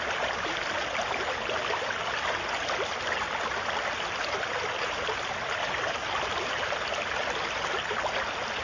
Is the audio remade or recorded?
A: recorded